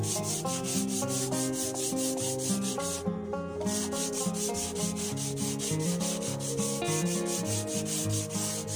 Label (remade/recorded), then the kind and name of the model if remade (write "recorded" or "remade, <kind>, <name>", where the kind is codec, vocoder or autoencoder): recorded